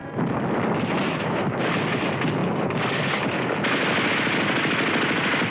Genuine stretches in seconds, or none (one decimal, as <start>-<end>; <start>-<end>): 0.0-5.5